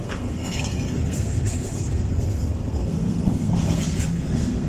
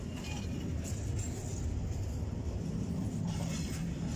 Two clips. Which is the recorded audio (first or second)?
second